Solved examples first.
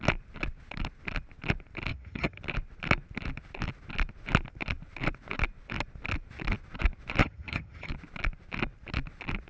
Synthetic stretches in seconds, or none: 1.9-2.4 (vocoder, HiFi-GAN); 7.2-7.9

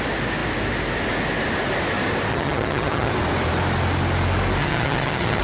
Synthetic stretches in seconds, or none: 2.3-3.1 (vocoder, HiFi-GAN); 4.6-5.4

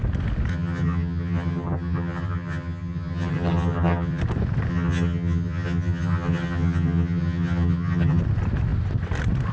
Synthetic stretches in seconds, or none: 0.5-4.2 (vocoder, HiFi-GAN); 4.7-8.2

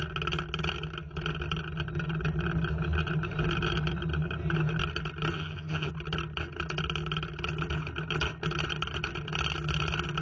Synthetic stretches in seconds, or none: 5.3-5.9 (vocoder, HiFi-GAN)